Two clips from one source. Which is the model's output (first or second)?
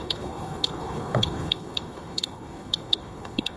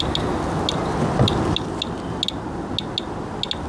first